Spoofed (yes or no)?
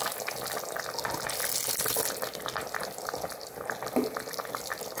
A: no